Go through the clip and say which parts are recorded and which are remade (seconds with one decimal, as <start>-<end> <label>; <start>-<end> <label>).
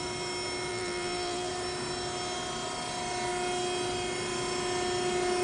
0.0-0.7 recorded; 0.7-1.5 remade; 1.5-5.4 recorded